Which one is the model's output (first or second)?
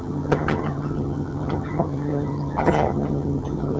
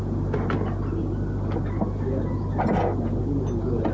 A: first